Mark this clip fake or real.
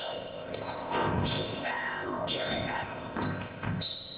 fake